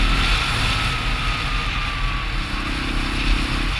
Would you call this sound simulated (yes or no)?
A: no